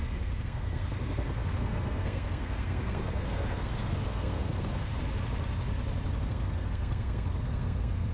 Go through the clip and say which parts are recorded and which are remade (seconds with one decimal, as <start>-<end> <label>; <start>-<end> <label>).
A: 0.0-4.9 remade; 4.9-6.2 recorded; 6.2-8.1 remade